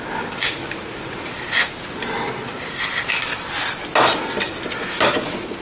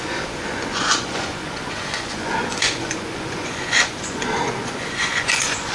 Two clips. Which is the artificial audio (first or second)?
second